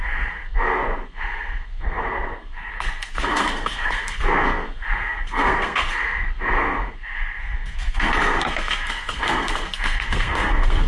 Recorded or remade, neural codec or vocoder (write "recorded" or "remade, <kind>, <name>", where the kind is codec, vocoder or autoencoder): remade, codec, SNAC